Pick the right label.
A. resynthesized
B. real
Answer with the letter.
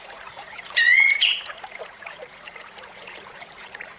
A